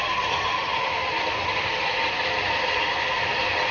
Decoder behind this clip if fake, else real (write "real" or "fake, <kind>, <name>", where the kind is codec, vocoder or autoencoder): real